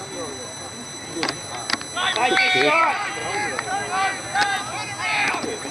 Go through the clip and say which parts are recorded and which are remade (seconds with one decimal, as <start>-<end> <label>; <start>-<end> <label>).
0.0-1.6 remade; 1.6-2.8 recorded; 2.8-3.2 remade; 3.2-5.3 recorded; 5.3-5.7 remade